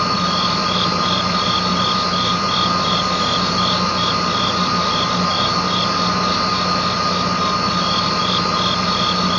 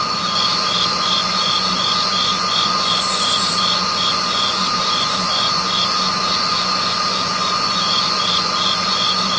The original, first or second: first